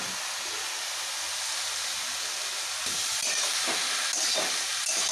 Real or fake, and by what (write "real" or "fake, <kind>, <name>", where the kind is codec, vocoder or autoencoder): real